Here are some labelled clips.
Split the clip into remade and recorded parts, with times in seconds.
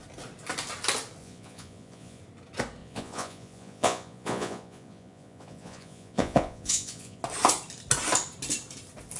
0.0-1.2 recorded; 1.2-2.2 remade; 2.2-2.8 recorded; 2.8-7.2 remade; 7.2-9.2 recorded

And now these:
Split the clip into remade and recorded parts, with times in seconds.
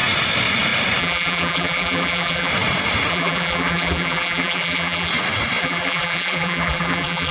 0.0-1.0 recorded; 1.0-2.5 remade; 2.5-3.1 recorded; 3.1-5.1 remade; 5.1-5.6 recorded; 5.6-7.3 remade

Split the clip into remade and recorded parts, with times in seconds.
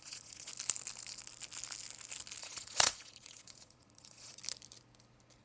0.0-0.5 remade; 0.5-2.4 recorded; 2.4-4.4 remade; 4.4-5.4 recorded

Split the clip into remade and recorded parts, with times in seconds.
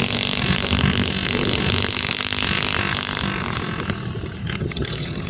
0.0-4.4 recorded; 4.4-5.3 remade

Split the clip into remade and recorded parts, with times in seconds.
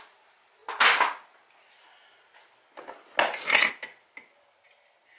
0.0-5.2 recorded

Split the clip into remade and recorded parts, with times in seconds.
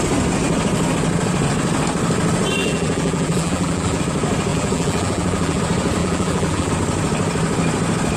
0.0-2.6 recorded; 2.6-4.0 remade; 4.0-4.5 recorded; 4.5-5.6 remade; 5.6-6.0 recorded; 6.0-6.7 remade; 6.7-8.2 recorded